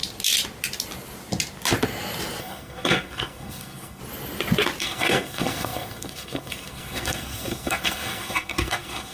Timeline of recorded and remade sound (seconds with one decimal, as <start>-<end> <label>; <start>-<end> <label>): 0.0-2.4 recorded; 2.4-4.0 remade; 4.0-4.8 recorded; 4.8-9.1 remade